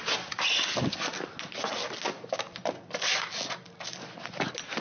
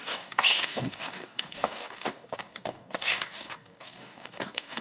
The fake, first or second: second